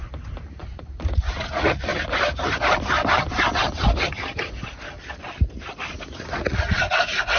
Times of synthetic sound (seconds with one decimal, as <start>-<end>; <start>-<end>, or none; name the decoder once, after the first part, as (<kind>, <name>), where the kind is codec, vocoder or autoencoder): 0.6-1.9 (vocoder, Vocos); 6.3-7.4